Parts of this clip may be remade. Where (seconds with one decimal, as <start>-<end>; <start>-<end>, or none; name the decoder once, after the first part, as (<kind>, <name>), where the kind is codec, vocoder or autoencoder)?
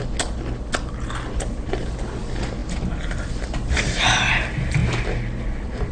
none